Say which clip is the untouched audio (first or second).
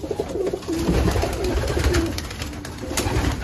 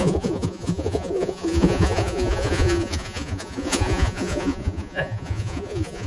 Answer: first